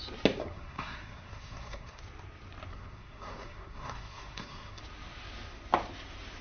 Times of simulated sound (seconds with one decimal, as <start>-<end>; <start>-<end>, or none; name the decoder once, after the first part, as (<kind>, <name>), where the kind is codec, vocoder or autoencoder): 0.4-2.0 (codec, SNAC); 2.7-4.8